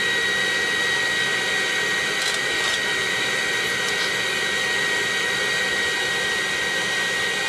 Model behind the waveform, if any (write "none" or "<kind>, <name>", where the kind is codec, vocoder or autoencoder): none